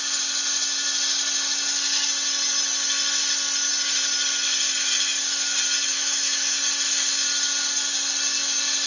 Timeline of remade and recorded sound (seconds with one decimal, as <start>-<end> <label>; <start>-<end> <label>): 0.0-5.9 recorded; 5.9-6.6 remade; 6.6-8.9 recorded